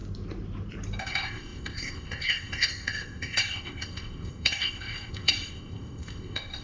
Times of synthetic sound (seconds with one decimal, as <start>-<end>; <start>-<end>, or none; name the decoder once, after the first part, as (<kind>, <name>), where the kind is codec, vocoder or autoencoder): 1.0-6.6 (codec, ZipCodec)